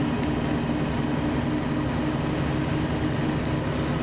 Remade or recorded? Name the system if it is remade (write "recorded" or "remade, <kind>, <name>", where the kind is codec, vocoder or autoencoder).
recorded